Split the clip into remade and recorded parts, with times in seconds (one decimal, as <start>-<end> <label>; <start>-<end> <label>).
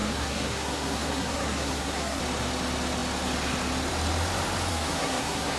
0.0-2.2 remade; 2.2-4.7 recorded; 4.7-5.6 remade